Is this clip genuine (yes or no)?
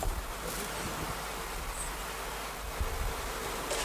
yes